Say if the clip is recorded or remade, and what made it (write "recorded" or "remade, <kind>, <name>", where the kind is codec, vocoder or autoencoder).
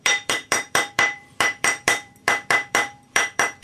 remade, vocoder, BigVGAN v2